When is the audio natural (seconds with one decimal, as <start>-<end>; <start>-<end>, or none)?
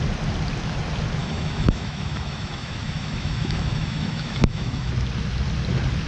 0.0-1.2; 4.9-6.1